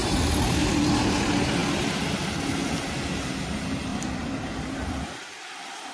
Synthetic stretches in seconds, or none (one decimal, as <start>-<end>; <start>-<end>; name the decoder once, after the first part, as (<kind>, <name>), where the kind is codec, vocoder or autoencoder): 0.6-1.1 (vocoder, BigVGAN v2); 3.9-4.9